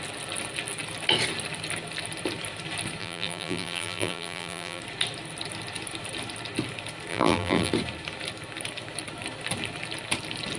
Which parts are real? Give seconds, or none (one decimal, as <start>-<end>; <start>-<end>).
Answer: 0.0-3.0; 4.8-7.1; 7.7-10.6

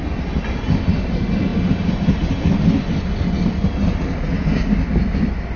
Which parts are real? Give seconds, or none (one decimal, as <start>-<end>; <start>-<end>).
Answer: 0.0-5.6

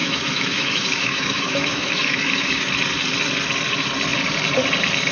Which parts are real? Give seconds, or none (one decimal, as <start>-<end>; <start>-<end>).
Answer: 2.7-5.1

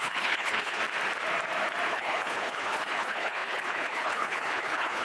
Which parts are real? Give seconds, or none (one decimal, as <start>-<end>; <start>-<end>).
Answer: 0.8-1.9